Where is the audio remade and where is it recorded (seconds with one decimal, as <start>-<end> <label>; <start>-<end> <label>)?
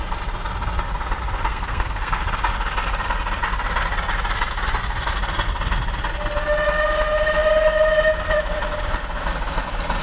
0.0-1.5 recorded; 1.5-2.2 remade; 2.2-10.0 recorded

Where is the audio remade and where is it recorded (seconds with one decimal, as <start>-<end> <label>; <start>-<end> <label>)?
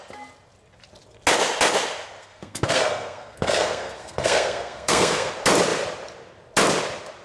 0.0-2.2 recorded; 2.2-5.3 remade; 5.3-7.2 recorded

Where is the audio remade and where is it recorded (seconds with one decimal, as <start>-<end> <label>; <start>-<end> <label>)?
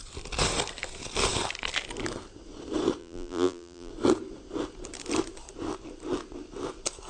0.0-3.0 recorded; 3.0-3.9 remade; 3.9-7.1 recorded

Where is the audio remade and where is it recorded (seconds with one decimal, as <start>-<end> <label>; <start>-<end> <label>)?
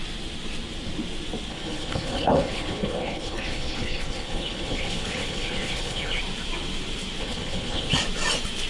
0.0-1.5 recorded; 1.5-6.2 remade; 6.2-7.2 recorded; 7.2-7.9 remade; 7.9-8.7 recorded